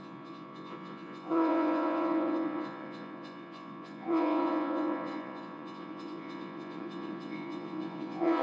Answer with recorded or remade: remade